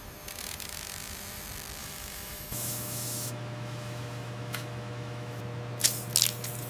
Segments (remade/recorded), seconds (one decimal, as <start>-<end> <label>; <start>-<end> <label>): 0.0-1.8 recorded; 1.8-5.4 remade; 5.4-6.7 recorded